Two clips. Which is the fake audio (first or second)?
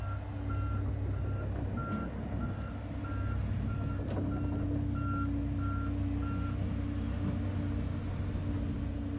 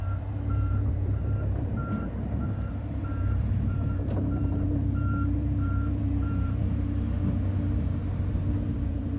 second